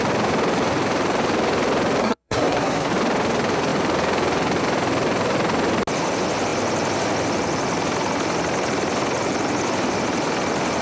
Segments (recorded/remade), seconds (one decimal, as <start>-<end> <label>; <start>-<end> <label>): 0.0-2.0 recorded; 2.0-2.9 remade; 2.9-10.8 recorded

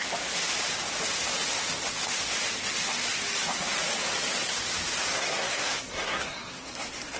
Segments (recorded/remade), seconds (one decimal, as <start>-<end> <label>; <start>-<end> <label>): 0.0-5.1 recorded; 5.1-7.2 remade

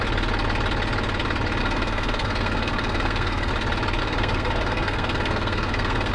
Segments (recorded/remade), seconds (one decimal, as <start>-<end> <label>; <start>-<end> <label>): 0.0-1.6 recorded; 1.6-3.5 remade; 3.5-4.0 recorded; 4.0-6.1 remade